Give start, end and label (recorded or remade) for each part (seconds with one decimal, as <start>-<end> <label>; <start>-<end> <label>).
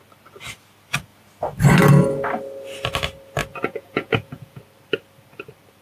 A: 0.0-3.5 recorded; 3.5-4.6 remade; 4.6-5.8 recorded